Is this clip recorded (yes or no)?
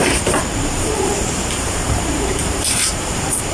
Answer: no